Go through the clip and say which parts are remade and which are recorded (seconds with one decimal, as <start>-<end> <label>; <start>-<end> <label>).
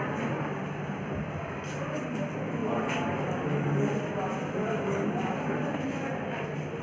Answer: 0.0-6.8 recorded